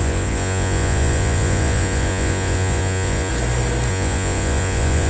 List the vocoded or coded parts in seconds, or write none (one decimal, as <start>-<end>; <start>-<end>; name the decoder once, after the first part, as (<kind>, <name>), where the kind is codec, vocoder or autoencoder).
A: 0.0-3.3 (vocoder, Vocos); 3.9-5.1

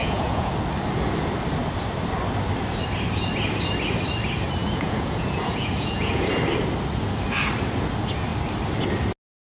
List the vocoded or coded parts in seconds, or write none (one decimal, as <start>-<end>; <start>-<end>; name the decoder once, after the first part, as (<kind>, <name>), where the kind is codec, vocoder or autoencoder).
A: 0.0-0.5 (vocoder, Vocos); 4.6-6.3